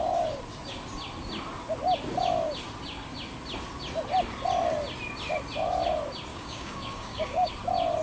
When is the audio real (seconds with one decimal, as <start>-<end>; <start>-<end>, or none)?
0.0-6.3; 7.5-8.0

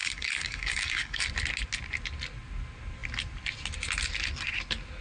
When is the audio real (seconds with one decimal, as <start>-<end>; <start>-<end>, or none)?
1.2-5.0

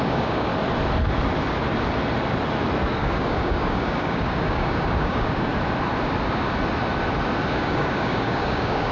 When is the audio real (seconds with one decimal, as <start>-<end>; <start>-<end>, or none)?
0.5-3.0; 5.5-7.5

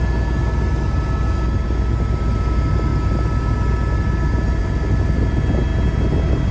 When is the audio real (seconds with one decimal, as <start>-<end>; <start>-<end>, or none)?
0.0-6.5

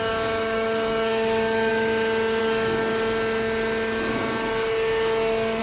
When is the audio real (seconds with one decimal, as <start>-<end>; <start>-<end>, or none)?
1.7-2.4; 2.9-5.6